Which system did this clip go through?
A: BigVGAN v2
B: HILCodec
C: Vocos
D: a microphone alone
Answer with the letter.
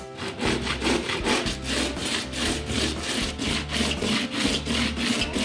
D